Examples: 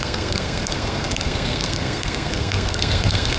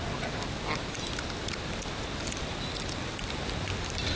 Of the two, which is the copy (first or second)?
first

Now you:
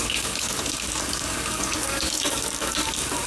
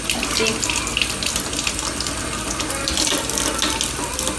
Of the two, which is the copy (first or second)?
first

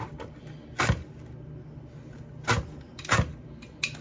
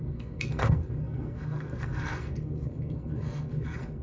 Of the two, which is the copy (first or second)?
second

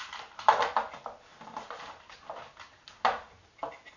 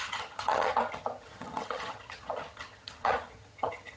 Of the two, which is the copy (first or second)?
second